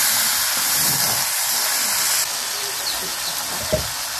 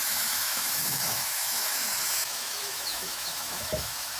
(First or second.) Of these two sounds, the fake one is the second